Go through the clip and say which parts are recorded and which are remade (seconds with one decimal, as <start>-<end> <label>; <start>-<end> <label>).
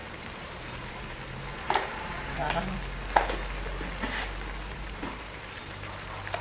0.0-2.4 remade; 2.4-4.7 recorded; 4.7-6.4 remade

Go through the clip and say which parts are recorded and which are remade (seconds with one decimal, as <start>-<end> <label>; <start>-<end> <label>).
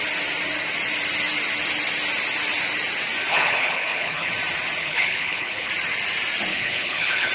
0.0-3.3 recorded; 3.3-4.3 remade; 4.3-4.8 recorded; 4.8-5.7 remade; 5.7-6.5 recorded; 6.5-7.3 remade